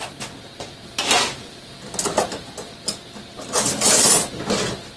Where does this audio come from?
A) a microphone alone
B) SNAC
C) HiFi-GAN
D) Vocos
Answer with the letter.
A